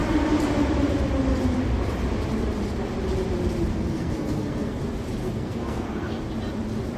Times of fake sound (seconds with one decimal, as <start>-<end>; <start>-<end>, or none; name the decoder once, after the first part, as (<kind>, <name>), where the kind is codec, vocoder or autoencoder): 3.7-4.8 (codec, SNAC); 5.2-6.2